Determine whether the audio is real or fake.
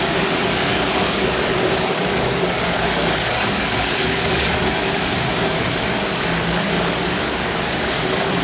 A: fake